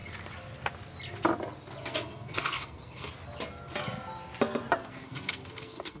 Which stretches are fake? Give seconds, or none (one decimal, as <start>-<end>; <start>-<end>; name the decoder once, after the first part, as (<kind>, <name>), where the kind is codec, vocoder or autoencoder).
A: 1.8-3.1 (codec, SNAC); 4.8-6.0